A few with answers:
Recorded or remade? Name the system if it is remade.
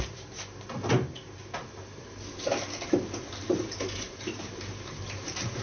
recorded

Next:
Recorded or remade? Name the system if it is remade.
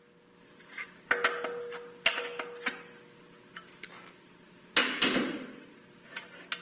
recorded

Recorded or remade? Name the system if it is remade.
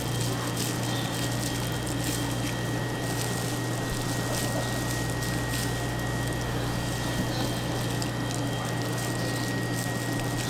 recorded